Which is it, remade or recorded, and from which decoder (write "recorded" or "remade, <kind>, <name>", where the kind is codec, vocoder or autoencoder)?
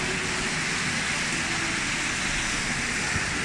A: recorded